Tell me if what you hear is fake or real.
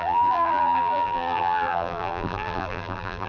fake